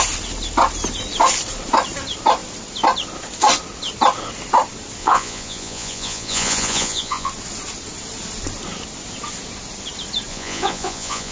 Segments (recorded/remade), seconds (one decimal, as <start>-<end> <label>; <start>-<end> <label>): 0.0-5.0 recorded; 5.0-7.3 remade; 7.3-10.3 recorded; 10.3-11.3 remade